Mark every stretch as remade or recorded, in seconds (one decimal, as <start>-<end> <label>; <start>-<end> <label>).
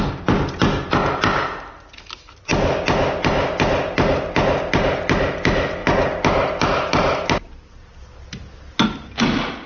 0.0-9.7 recorded